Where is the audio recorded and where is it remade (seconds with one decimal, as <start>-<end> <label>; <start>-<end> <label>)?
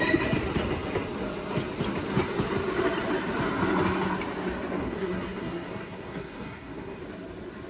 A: 0.0-4.8 recorded; 4.8-7.0 remade; 7.0-7.7 recorded